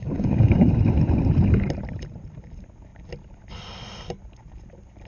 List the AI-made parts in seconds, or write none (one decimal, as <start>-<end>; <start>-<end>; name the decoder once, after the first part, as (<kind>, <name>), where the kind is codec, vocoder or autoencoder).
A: 0.0-0.7 (codec, DAC)